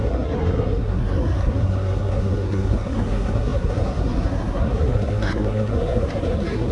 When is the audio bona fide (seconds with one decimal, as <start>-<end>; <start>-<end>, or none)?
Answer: none